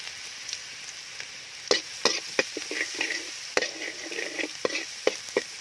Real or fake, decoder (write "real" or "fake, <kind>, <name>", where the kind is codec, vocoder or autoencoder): real